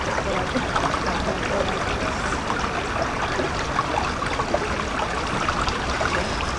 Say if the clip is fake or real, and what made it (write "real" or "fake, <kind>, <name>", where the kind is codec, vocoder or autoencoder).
real